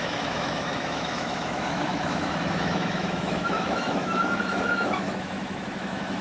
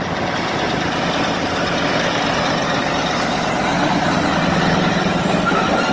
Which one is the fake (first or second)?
first